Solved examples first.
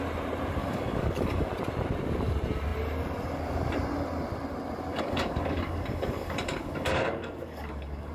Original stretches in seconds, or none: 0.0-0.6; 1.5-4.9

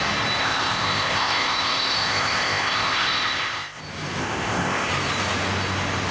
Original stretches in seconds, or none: 0.0-0.4; 3.8-4.2; 4.9-6.1